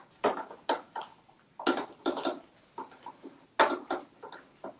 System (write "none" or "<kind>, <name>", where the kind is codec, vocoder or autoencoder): none